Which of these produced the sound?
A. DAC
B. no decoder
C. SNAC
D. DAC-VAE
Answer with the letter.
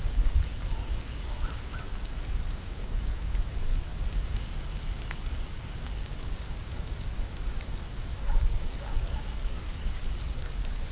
A